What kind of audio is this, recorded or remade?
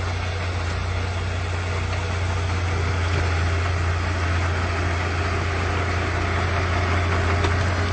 recorded